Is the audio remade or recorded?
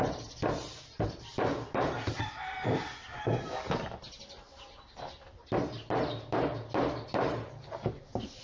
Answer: recorded